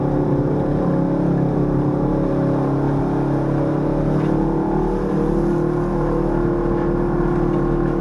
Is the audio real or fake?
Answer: real